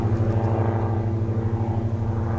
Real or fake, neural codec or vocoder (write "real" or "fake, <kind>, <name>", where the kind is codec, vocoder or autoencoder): real